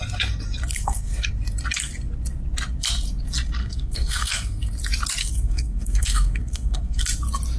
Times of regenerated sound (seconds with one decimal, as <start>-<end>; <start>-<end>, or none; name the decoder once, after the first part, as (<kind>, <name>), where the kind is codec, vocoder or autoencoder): 0.7-1.3 (codec, SNAC); 3.6-4.6; 5.2-7.0